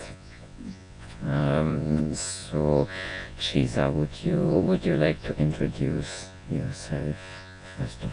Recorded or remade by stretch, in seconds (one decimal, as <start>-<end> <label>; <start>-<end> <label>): 0.0-8.1 remade